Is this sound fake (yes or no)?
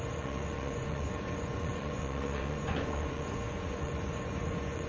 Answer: yes